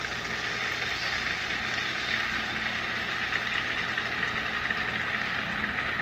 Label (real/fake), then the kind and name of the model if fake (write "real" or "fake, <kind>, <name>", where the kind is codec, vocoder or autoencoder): real